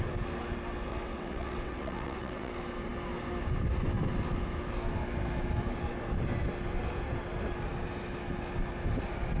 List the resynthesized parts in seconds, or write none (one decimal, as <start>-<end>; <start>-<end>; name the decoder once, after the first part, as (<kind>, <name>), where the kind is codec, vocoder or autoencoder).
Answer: 0.9-2.5 (vocoder, WaveNeXt)